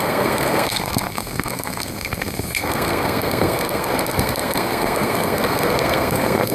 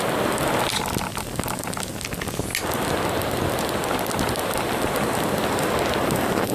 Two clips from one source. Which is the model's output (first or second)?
first